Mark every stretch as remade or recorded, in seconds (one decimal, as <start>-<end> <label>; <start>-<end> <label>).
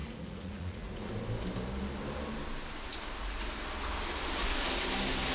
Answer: 0.0-1.1 remade; 1.1-5.3 recorded